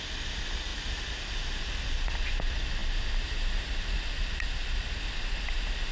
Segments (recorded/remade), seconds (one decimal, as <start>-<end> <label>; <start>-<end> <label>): 0.0-5.9 recorded